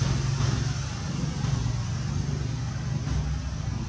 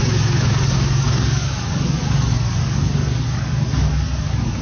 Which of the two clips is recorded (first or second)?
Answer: first